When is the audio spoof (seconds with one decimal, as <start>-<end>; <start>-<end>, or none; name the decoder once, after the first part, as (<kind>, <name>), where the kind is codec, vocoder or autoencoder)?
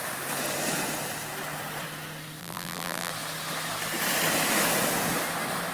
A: 2.4-3.1 (vocoder, BigVGAN v2)